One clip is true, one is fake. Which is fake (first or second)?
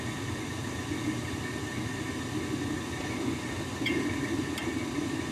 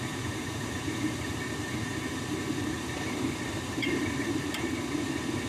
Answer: second